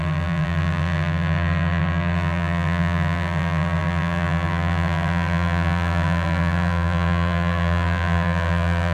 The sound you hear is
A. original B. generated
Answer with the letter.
B